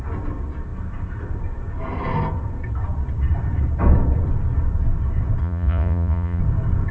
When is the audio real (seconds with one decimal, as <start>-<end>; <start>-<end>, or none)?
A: 0.0-5.4; 6.4-6.9